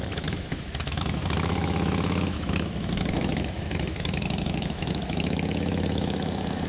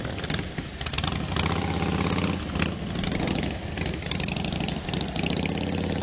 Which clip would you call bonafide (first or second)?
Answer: second